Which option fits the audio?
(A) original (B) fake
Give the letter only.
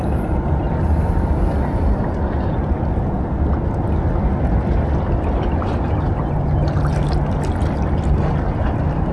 A